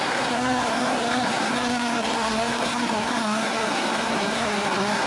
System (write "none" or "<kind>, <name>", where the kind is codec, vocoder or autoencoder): codec, SNAC